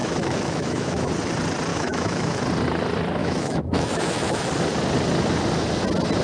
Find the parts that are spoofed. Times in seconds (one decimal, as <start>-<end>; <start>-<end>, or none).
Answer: 0.0-1.1; 1.7-2.4; 3.2-4.5